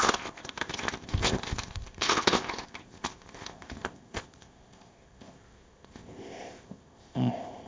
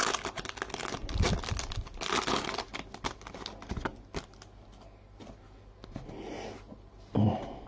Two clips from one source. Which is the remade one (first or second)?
first